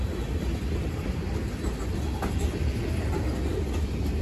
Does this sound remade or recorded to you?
recorded